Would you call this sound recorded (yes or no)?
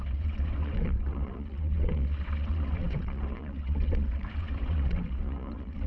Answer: no